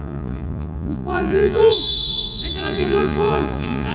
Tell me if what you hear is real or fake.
fake